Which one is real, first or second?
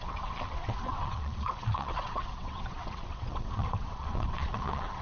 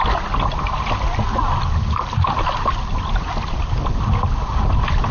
second